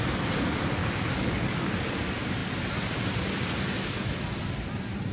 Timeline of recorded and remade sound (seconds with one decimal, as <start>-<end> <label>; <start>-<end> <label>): 0.0-0.8 recorded; 0.8-1.7 remade; 1.7-5.1 recorded

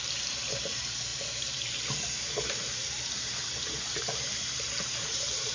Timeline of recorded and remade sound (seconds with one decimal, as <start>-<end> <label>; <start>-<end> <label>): 0.0-5.5 remade

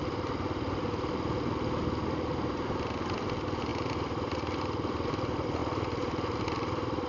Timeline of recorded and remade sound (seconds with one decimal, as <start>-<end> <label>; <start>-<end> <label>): 0.0-5.6 remade; 5.6-6.4 recorded; 6.4-7.1 remade

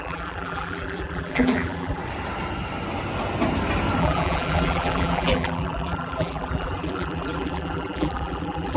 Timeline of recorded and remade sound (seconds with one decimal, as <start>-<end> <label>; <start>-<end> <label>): 0.0-2.0 remade; 2.0-4.0 recorded; 4.0-8.8 remade